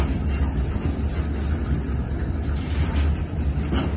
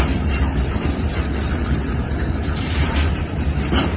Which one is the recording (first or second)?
first